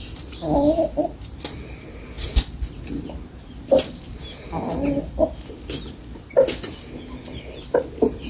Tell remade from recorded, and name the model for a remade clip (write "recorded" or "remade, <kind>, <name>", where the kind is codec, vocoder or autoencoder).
recorded